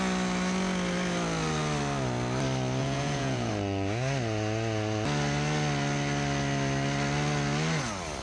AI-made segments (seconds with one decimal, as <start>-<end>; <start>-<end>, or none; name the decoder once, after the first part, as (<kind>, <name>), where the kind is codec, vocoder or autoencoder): 2.8-3.5 (vocoder, Vocos)